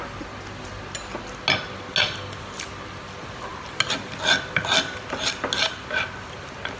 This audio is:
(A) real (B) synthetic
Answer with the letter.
A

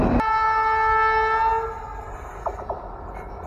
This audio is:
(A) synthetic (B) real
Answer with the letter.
B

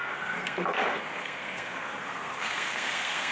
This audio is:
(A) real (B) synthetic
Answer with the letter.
B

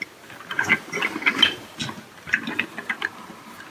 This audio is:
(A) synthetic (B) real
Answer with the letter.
B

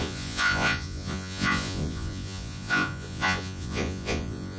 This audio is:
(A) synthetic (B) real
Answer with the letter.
A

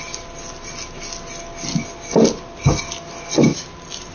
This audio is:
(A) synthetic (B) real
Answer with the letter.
B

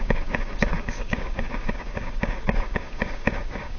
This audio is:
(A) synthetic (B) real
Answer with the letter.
A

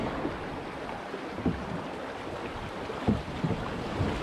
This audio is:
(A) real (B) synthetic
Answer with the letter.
A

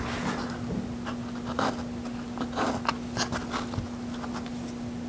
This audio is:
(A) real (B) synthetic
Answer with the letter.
A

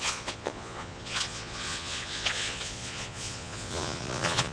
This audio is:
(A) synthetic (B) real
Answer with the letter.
A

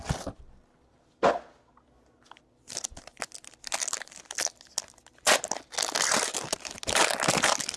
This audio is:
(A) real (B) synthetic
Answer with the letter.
A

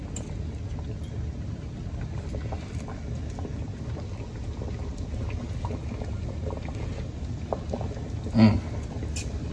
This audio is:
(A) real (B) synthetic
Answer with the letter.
A